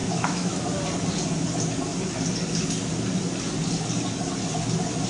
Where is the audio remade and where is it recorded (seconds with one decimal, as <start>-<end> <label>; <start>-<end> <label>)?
0.0-0.6 remade; 0.6-5.1 recorded